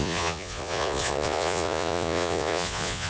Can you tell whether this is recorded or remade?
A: remade